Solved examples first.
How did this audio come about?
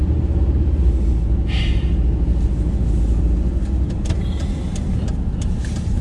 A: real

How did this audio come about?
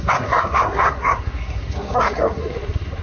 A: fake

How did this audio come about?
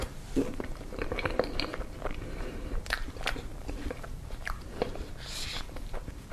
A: fake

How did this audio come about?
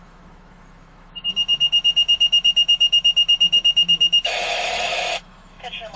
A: fake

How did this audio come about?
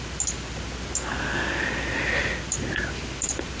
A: real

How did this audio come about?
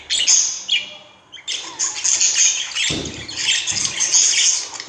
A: real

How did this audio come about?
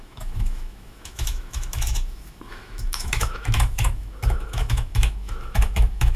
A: fake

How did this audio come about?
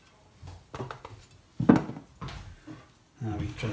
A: real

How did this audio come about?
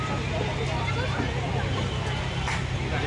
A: real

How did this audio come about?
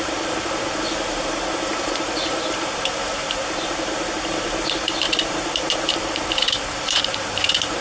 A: fake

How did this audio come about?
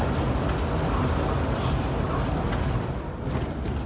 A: real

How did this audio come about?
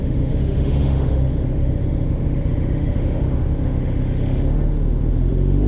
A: fake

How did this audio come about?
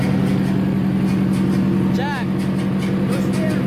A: real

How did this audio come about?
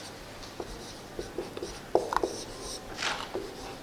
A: real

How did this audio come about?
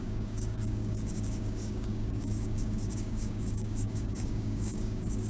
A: fake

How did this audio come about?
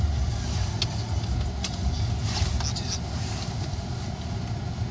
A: real